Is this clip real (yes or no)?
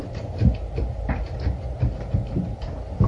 yes